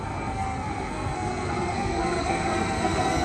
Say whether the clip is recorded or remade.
remade